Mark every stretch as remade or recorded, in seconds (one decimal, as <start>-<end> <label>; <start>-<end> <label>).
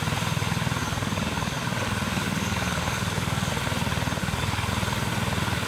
0.0-0.8 recorded; 0.8-3.5 remade; 3.5-4.2 recorded; 4.2-4.7 remade; 4.7-5.7 recorded